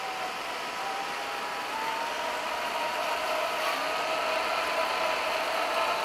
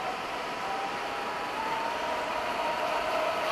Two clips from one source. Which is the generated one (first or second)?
second